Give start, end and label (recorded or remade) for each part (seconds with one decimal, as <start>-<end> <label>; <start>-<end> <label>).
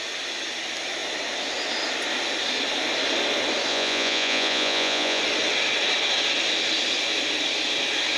0.0-3.7 recorded; 3.7-5.2 remade; 5.2-8.2 recorded